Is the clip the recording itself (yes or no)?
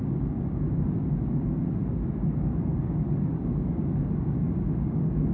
no